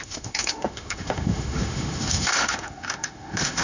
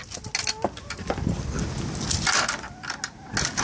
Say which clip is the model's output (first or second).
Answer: first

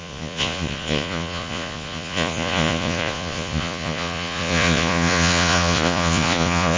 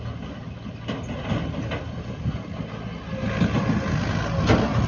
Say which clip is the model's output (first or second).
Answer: first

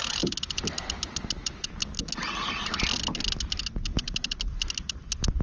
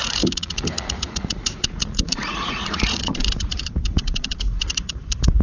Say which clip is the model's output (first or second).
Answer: second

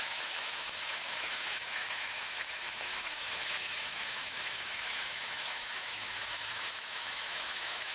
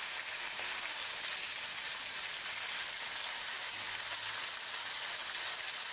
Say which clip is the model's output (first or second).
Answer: first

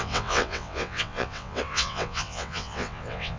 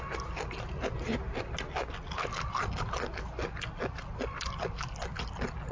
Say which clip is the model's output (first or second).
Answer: first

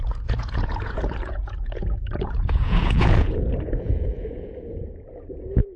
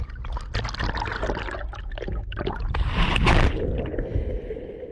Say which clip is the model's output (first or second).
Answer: first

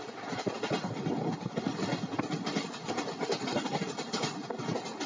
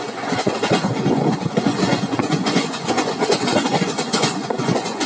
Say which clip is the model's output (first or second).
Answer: second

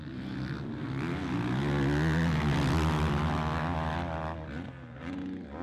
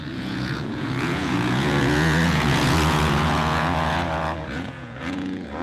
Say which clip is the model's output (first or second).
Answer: second